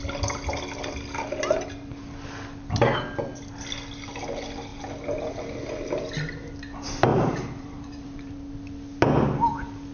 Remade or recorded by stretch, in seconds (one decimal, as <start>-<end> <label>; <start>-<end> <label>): 0.0-7.1 recorded; 7.1-8.5 remade; 8.5-9.9 recorded

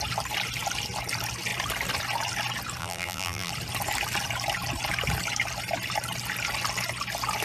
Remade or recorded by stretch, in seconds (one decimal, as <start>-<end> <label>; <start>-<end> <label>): 0.0-2.8 recorded; 2.8-3.5 remade; 3.5-7.4 recorded

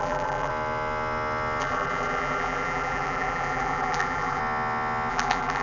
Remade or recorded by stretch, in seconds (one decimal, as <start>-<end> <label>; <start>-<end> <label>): 0.0-0.5 remade; 0.5-1.6 recorded; 1.6-4.4 remade; 4.4-5.1 recorded; 5.1-5.6 remade

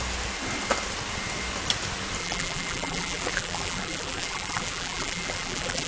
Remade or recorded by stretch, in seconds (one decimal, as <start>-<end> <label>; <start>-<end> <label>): 0.0-2.2 recorded; 2.2-5.9 remade

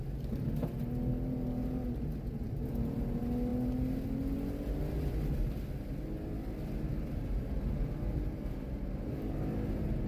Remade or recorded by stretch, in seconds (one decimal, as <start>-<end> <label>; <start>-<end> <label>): 0.0-10.1 recorded